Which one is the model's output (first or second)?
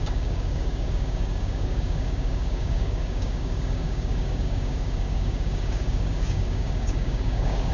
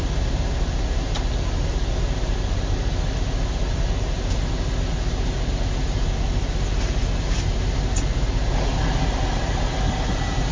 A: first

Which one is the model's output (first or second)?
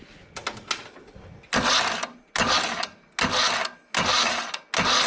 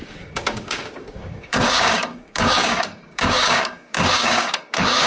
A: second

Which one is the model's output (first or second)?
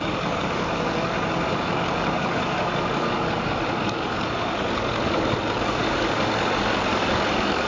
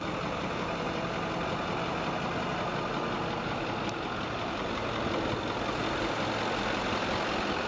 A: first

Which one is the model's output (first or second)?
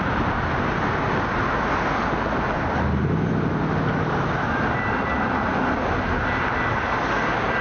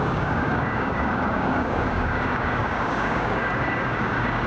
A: second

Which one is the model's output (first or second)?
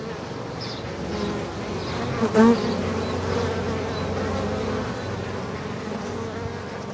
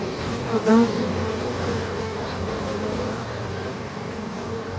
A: second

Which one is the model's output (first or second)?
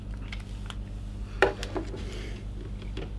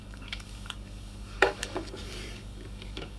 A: second